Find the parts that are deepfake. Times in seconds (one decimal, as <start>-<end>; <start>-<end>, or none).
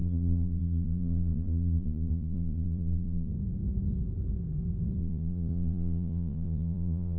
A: 0.0-3.3; 5.0-7.2